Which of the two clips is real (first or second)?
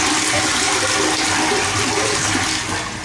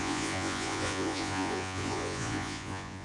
first